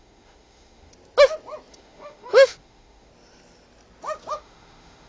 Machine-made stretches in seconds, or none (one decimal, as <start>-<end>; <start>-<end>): 0.0-0.9; 1.7-3.1; 4.3-5.1